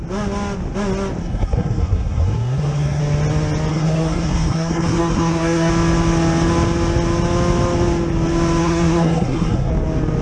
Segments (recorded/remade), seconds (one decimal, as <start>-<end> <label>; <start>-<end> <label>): 0.0-1.2 recorded; 1.2-3.0 remade; 3.0-3.7 recorded; 3.7-5.7 remade; 5.7-8.6 recorded; 8.6-9.7 remade; 9.7-10.2 recorded